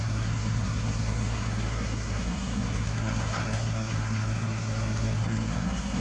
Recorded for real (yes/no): no